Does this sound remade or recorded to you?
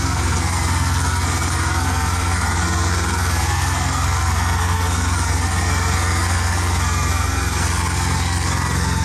remade